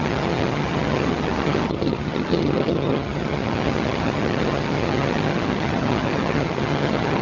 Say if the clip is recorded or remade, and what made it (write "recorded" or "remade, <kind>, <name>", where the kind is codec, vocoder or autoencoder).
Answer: remade, vocoder, HiFi-GAN